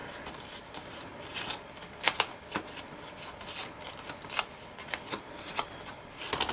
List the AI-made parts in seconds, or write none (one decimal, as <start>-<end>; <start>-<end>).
none